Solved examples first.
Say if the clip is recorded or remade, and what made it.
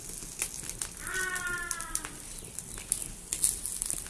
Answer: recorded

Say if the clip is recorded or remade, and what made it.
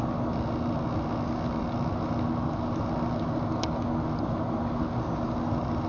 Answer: recorded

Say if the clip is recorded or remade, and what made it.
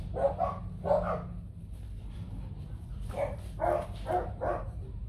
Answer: recorded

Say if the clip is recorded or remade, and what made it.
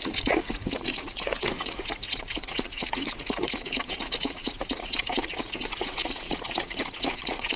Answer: remade, vocoder, Vocos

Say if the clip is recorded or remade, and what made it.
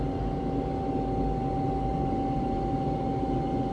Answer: recorded